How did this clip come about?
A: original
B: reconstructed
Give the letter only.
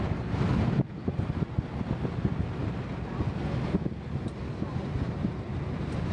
A